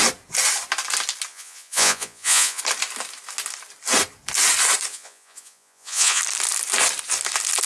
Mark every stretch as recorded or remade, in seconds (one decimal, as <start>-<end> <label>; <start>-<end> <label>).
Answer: 0.0-1.3 recorded; 1.3-2.6 remade; 2.6-4.9 recorded; 4.9-6.2 remade; 6.2-7.7 recorded